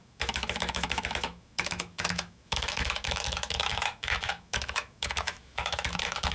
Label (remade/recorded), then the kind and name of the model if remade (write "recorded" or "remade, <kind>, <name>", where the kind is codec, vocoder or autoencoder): remade, autoencoder, DAC-VAE